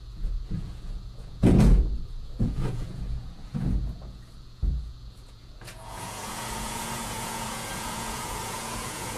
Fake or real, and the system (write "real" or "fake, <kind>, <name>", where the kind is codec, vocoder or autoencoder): fake, vocoder, Vocos